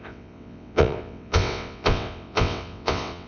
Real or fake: fake